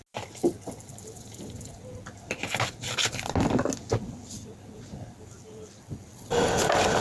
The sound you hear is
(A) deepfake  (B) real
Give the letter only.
B